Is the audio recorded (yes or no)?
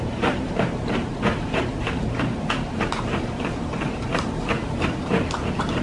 no